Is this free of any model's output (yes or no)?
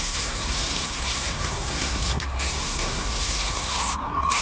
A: no